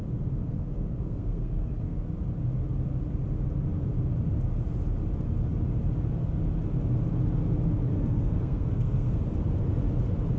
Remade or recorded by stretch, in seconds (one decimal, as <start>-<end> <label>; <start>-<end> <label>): 0.0-0.4 recorded; 0.4-2.0 remade; 2.0-7.9 recorded; 7.9-9.2 remade; 9.2-10.4 recorded